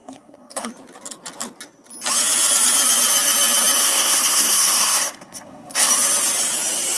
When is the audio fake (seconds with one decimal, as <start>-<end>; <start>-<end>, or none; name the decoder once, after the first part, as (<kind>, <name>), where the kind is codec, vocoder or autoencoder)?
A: 0.0-0.7 (codec, SNAC); 3.8-5.9